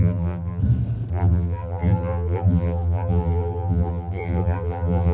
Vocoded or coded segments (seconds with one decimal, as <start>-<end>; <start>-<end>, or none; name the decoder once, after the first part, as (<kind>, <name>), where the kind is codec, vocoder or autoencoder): 0.0-0.6 (vocoder, BigVGAN v2); 1.1-5.1